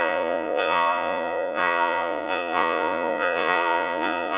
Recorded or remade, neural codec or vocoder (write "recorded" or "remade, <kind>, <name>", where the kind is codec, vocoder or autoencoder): remade, vocoder, Vocos